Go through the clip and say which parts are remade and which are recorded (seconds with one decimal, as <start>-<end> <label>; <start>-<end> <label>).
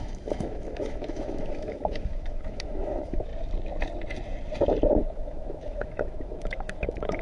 0.0-3.3 remade; 3.3-4.9 recorded; 4.9-7.2 remade